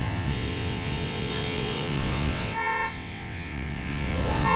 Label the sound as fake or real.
fake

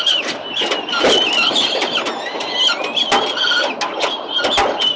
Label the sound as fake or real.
real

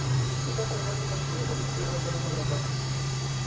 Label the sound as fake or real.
fake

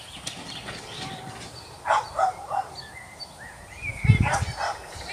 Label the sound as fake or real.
real